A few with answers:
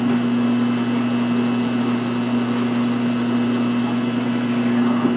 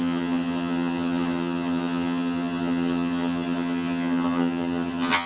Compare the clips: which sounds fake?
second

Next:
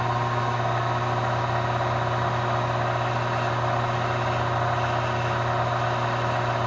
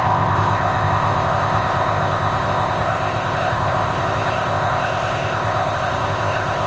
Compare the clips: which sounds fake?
second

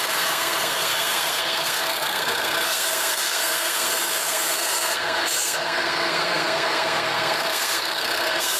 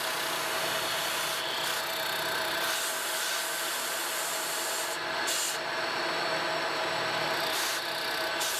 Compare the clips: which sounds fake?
first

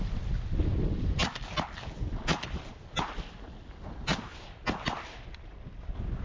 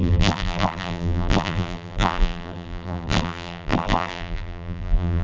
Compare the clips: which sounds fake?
second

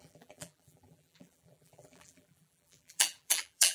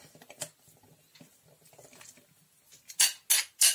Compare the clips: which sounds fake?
first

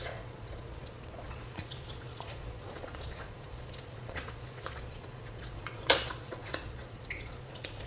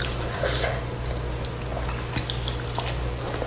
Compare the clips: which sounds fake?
first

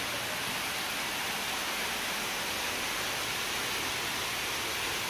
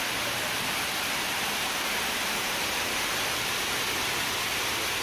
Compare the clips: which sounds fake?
second